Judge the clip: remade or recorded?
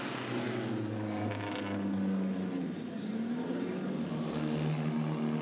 recorded